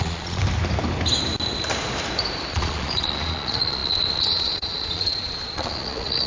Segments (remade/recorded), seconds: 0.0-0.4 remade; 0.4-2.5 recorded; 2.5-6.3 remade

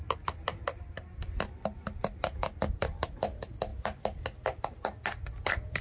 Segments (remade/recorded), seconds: 0.0-5.8 recorded

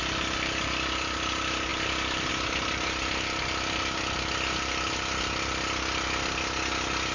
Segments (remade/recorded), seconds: 0.0-7.1 recorded

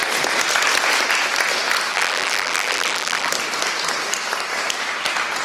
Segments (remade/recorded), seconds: 0.0-1.9 recorded; 1.9-3.3 remade; 3.3-5.4 recorded

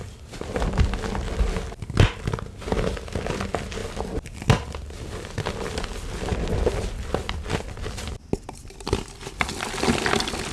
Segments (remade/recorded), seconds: 0.0-10.5 recorded